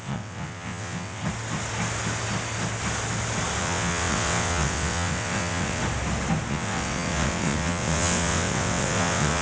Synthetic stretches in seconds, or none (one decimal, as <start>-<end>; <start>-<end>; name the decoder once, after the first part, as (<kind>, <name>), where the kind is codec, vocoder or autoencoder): 0.0-1.2 (vocoder, WaveNeXt); 3.6-5.8; 6.5-9.4